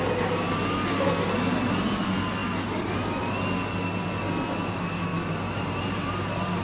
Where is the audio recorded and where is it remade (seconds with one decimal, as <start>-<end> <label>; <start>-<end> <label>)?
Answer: 0.0-6.6 recorded